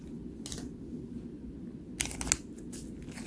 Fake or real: real